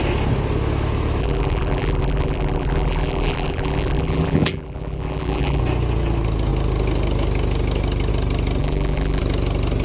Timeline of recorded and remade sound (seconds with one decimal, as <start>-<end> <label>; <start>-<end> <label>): 0.0-1.2 recorded; 1.2-5.6 remade; 5.6-8.6 recorded; 8.6-9.2 remade; 9.2-9.8 recorded